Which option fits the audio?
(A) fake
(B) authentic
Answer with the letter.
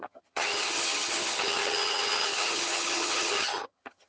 A